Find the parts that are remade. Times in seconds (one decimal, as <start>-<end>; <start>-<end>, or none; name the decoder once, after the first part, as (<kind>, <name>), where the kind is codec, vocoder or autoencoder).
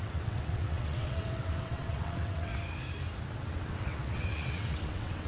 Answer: 0.0-2.5 (vocoder, WaveNeXt); 3.4-5.3